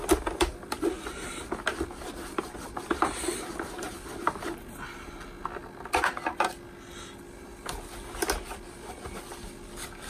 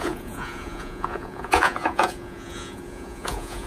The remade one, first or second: second